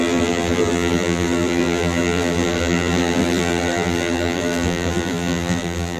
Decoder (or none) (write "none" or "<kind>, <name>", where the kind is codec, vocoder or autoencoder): vocoder, BigVGAN v2